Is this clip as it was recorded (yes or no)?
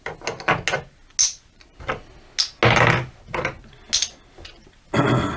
yes